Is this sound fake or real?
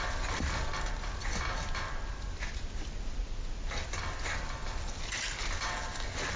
real